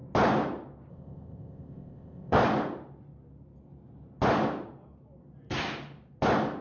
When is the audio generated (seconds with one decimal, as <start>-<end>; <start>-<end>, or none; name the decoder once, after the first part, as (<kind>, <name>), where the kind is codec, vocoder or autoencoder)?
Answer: 0.9-2.4 (codec, ZipCodec)